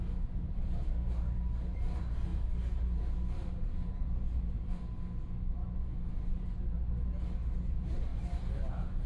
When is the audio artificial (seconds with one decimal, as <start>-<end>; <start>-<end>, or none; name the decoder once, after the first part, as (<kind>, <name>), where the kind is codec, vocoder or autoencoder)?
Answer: 8.1-8.7 (vocoder, BigVGAN v2)